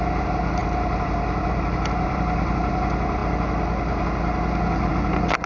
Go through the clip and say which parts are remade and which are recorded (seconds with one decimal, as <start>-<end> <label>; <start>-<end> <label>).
0.0-0.6 recorded; 0.6-2.7 remade; 2.7-5.5 recorded

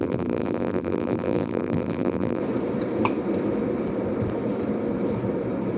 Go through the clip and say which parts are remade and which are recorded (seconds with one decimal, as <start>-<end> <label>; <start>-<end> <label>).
0.0-2.4 remade; 2.4-5.8 recorded

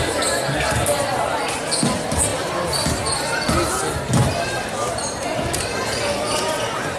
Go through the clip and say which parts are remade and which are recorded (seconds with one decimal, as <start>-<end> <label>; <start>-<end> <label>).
0.0-7.0 recorded

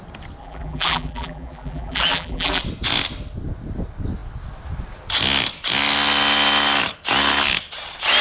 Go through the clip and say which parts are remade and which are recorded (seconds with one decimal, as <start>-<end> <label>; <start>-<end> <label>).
0.0-0.4 recorded; 0.4-2.6 remade; 2.6-8.2 recorded

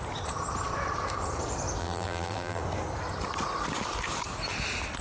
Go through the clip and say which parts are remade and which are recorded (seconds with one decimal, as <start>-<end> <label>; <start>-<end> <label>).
0.0-1.8 recorded; 1.8-2.6 remade; 2.6-5.0 recorded